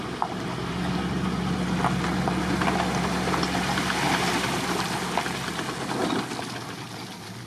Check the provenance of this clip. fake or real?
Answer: real